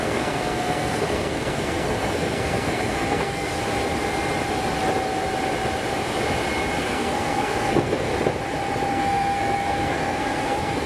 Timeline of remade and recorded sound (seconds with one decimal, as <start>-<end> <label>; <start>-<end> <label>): 0.0-3.5 remade; 3.5-6.8 recorded; 6.8-8.1 remade; 8.1-8.9 recorded; 8.9-10.9 remade